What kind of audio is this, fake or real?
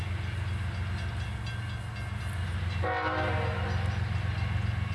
real